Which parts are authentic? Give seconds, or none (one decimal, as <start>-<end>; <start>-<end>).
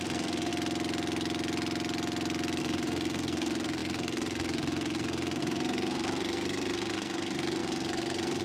0.5-2.6